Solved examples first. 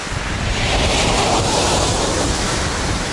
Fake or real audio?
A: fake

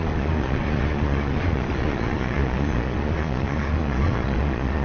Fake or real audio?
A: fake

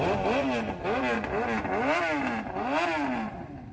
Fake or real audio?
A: real